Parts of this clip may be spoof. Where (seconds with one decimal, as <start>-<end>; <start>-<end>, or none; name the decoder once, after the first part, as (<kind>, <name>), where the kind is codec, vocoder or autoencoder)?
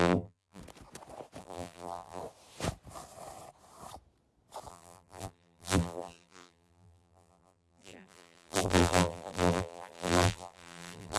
0.0-0.6 (vocoder, BigVGAN v2); 1.4-2.2; 4.7-11.2